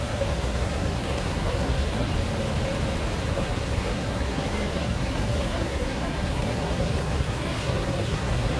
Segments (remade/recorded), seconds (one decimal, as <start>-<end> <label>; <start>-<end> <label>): 0.0-2.1 remade; 2.1-3.3 recorded; 3.3-8.6 remade